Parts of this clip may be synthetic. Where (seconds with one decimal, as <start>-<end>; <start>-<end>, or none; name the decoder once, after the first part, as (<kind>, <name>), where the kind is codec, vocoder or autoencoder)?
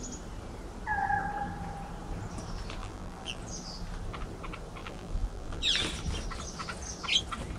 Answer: 2.8-3.4 (vocoder, BigVGAN v2); 4.8-5.6